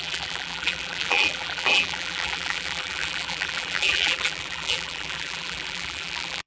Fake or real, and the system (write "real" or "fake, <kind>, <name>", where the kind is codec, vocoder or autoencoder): fake, vocoder, BigVGAN v2